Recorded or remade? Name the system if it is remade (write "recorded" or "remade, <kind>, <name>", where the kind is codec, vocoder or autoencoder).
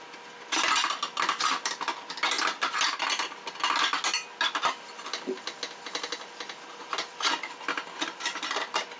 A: recorded